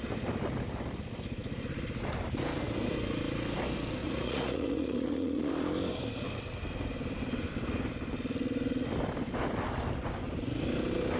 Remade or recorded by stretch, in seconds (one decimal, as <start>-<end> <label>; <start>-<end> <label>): 0.0-4.0 recorded; 4.0-5.5 remade; 5.5-11.2 recorded